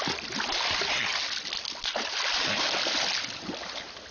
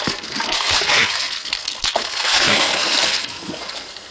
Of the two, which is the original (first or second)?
first